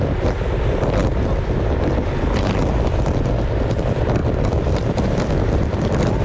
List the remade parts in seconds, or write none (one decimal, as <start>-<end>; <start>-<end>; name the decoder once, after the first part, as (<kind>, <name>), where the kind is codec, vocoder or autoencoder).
0.0-1.0 (vocoder, BigVGAN v2); 2.6-4.2; 4.7-6.2